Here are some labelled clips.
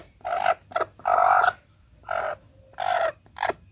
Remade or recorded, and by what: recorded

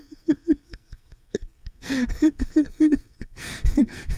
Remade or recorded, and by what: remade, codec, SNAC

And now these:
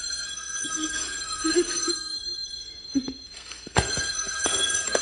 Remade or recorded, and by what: remade, codec, SNAC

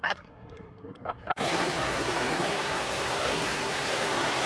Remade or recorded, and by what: remade, codec, SNAC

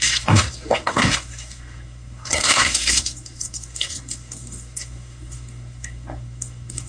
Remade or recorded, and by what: remade, codec, SNAC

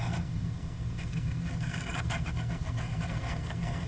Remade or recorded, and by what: remade, codec, SNAC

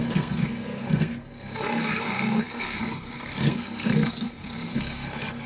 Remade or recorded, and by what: remade, codec, SNAC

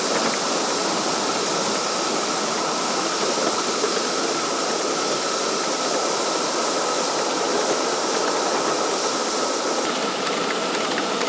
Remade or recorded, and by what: recorded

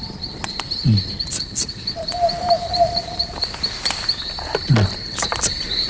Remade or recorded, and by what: recorded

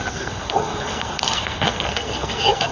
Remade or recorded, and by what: remade, codec, SNAC